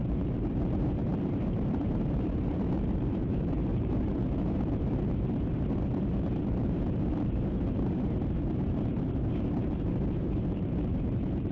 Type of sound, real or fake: fake